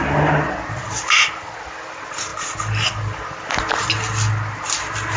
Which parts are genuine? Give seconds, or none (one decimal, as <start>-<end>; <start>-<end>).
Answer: 0.0-5.2